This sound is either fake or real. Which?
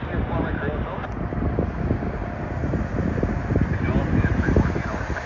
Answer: real